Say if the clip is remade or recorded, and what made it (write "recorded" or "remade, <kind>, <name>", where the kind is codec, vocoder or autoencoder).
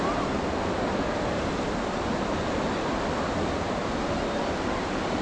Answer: recorded